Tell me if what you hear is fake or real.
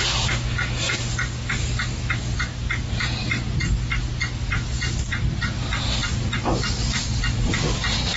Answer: real